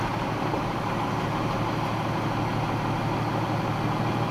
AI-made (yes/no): no